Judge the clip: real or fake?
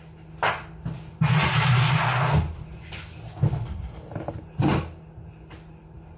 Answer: real